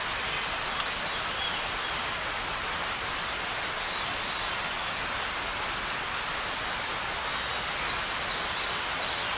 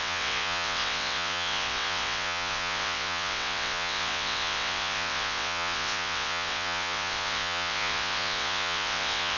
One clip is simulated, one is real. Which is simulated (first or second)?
second